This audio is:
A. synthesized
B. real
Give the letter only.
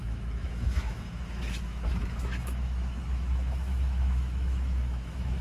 A